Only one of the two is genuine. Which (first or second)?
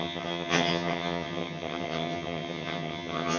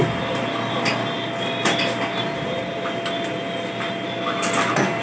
second